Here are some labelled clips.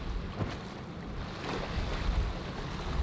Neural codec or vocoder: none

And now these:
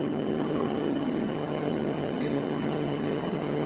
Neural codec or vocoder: vocoder, HiFi-GAN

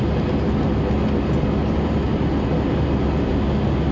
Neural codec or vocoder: none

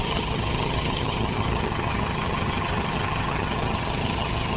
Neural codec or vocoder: vocoder, HiFi-GAN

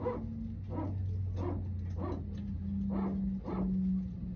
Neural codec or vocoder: none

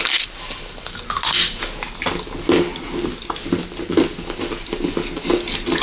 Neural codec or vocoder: none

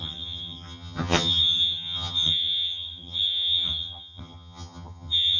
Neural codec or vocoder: vocoder, HiFi-GAN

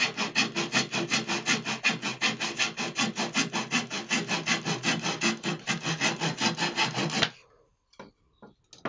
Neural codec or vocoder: none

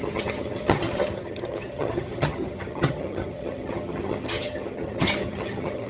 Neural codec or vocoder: vocoder, HiFi-GAN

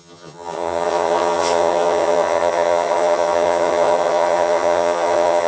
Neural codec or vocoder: vocoder, HiFi-GAN